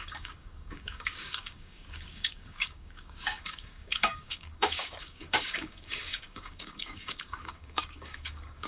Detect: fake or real fake